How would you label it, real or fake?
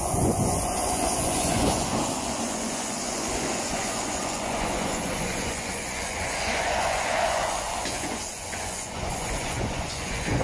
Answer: fake